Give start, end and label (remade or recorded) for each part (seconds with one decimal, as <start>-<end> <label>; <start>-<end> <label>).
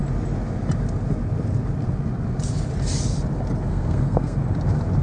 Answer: 0.0-3.7 recorded; 3.7-4.4 remade; 4.4-5.0 recorded